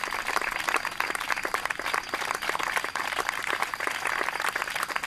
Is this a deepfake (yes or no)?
no